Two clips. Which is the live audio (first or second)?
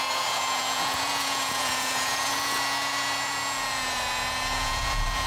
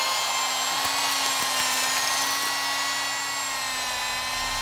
second